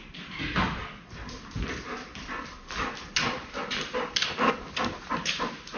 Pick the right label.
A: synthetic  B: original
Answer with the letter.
B